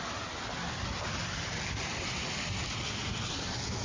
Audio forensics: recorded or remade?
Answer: recorded